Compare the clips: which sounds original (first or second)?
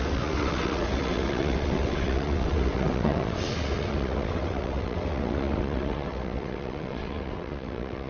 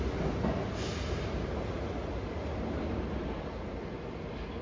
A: second